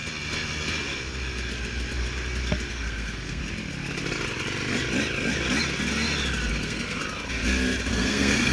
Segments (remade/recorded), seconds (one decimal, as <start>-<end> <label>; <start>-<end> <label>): 0.0-2.7 recorded; 2.7-3.4 remade; 3.4-6.5 recorded; 6.5-7.0 remade; 7.0-7.9 recorded; 7.9-8.5 remade